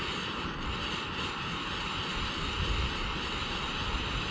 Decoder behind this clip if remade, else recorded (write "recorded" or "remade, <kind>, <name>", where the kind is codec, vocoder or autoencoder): recorded